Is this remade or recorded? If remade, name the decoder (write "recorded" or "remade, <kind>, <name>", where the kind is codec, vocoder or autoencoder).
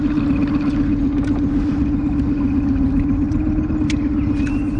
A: recorded